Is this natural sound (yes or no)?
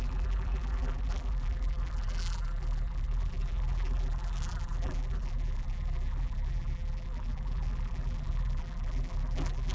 no